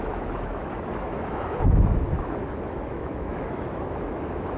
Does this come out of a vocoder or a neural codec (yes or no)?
yes